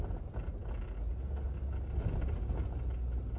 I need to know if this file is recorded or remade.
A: recorded